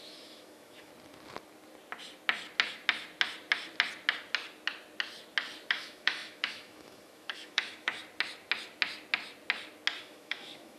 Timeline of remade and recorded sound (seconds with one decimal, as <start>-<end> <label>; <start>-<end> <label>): 0.0-0.9 remade; 0.9-5.7 recorded; 5.7-8.0 remade; 8.0-10.0 recorded; 10.0-10.8 remade